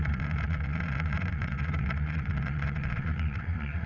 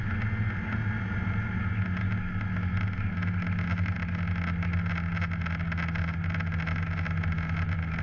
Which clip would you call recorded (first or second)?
second